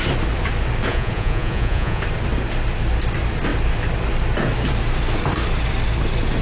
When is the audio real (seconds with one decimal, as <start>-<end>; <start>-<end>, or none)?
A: 0.0-0.9; 2.0-6.4